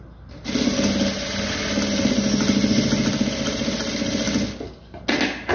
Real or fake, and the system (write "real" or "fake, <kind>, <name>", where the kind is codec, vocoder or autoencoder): real